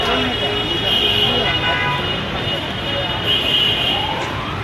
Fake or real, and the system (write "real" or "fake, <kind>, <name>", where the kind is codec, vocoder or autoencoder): real